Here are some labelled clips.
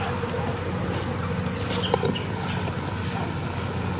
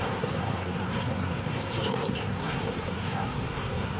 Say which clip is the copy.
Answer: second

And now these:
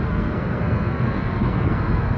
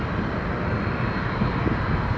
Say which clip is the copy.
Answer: first